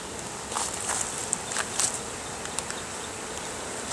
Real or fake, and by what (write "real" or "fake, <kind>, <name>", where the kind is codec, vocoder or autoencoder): real